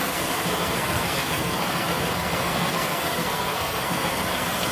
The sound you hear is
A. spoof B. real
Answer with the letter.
A